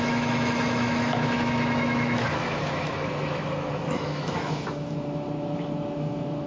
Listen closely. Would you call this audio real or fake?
fake